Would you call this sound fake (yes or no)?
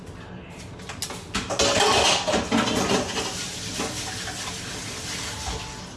no